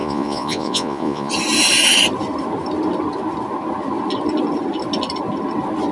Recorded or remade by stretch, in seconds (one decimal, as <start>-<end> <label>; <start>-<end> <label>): 0.0-1.3 remade; 1.3-5.9 recorded